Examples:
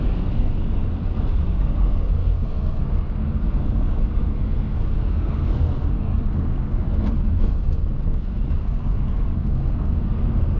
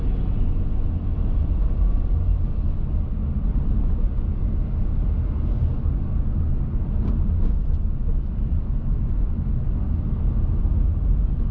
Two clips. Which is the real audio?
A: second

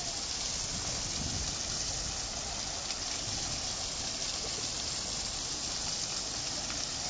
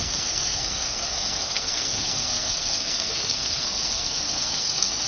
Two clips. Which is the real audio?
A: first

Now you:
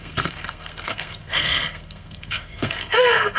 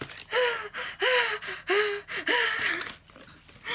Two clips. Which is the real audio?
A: second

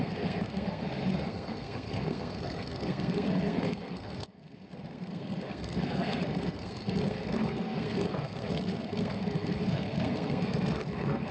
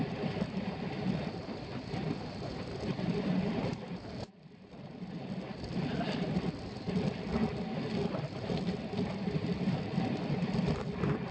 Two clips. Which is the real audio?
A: second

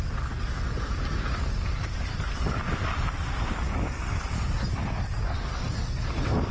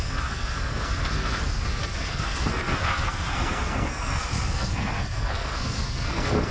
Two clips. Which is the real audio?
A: first